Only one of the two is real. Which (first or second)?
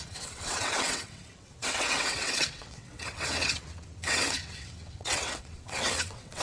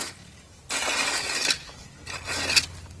second